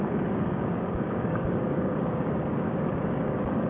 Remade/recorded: remade